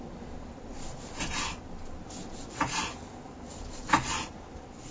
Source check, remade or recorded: recorded